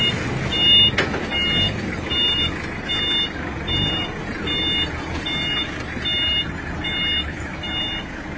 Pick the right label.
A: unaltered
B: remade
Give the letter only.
A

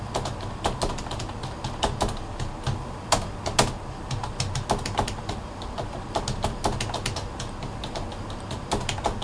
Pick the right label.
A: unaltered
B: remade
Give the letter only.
A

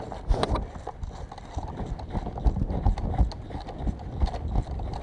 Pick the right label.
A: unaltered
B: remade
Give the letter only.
A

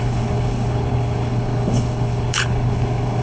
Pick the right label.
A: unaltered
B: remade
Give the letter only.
B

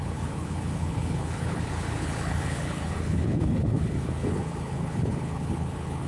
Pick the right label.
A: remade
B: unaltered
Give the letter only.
A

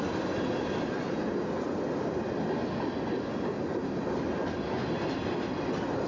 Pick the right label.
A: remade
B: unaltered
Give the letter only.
B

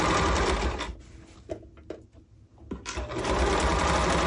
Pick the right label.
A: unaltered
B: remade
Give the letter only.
A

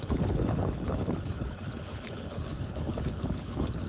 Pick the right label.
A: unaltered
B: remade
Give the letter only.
B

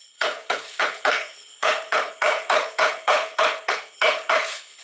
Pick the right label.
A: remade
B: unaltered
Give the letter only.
A